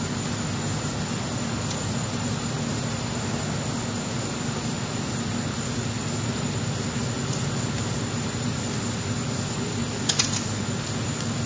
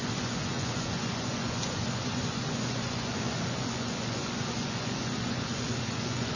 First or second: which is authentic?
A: first